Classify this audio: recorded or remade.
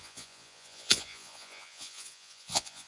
remade